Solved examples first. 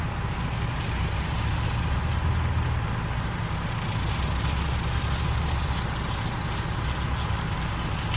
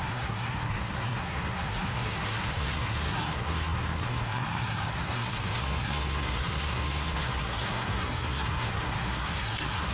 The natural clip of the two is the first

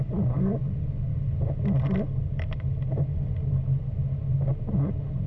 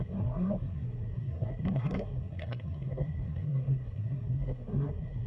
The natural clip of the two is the first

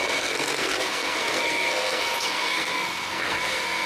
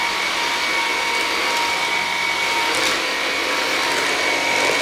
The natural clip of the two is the second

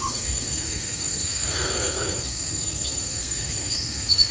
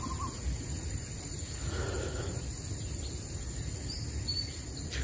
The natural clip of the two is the second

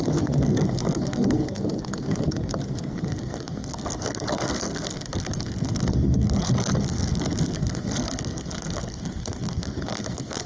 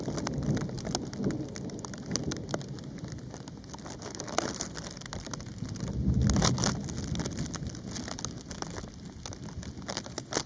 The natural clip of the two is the second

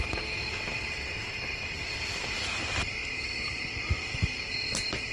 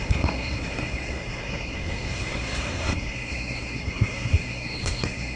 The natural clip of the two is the first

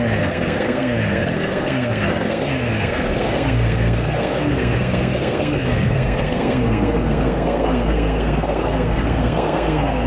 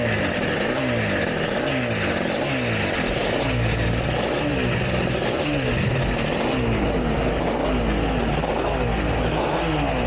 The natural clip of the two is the second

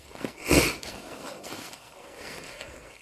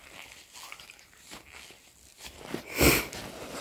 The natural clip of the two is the second